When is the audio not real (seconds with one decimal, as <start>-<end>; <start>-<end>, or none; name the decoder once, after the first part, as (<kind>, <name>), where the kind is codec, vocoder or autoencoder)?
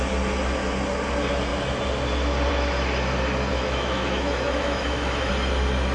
3.5-5.3 (autoencoder, DAC-VAE)